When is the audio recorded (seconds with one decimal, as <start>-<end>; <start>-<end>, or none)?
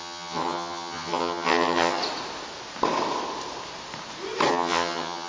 2.0-4.5